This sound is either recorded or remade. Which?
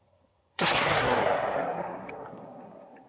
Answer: remade